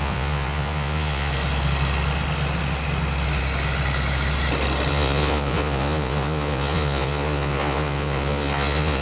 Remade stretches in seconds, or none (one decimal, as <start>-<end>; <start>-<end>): 0.0-1.3; 4.9-9.0